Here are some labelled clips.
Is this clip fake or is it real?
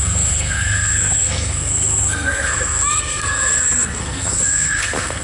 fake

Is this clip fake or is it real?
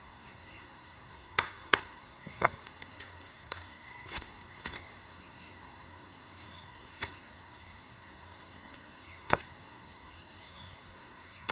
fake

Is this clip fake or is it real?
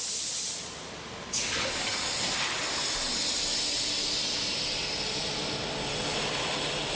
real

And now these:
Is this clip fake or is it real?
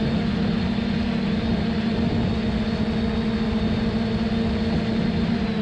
real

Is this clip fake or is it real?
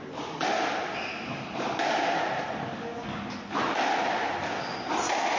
real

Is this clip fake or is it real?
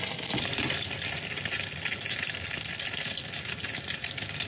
real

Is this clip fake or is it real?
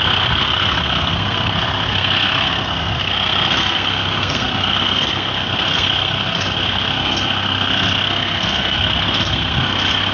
fake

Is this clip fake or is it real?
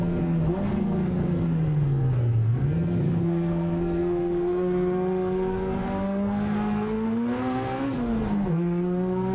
fake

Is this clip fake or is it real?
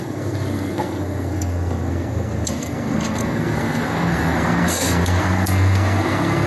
fake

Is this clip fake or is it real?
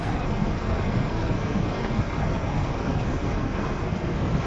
fake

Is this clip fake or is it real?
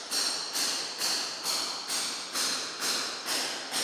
real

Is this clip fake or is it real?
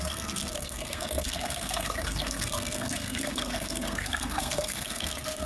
fake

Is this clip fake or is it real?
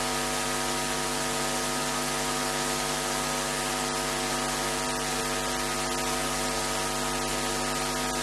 real